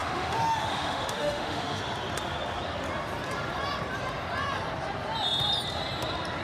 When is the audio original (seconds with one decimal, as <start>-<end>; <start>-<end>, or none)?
1.8-6.4